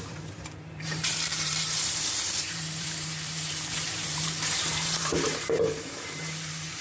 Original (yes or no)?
no